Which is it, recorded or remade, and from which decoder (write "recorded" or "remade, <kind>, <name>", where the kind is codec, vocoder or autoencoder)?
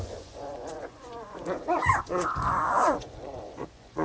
remade, vocoder, Vocos